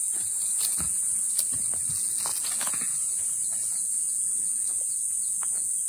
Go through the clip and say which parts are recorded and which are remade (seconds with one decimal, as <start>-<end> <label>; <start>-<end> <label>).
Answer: 0.0-1.2 remade; 1.2-1.9 recorded; 1.9-5.9 remade